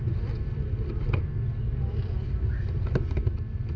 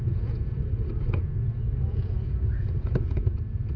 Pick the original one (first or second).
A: first